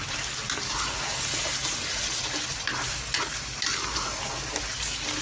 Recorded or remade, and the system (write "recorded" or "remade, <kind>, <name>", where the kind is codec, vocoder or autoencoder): recorded